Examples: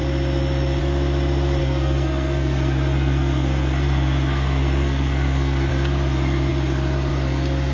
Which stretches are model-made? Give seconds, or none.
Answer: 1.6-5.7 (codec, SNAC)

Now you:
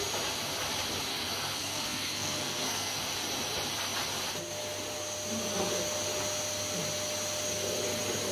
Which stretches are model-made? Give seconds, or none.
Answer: 1.1-3.0 (codec, SNAC)

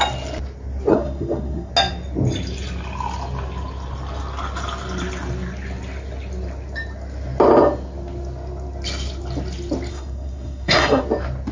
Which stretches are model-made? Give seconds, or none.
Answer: 0.9-1.7 (codec, SNAC); 9.9-11.0